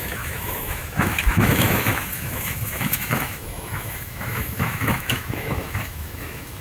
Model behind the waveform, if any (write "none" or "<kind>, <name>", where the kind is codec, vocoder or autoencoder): autoencoder, DAC-VAE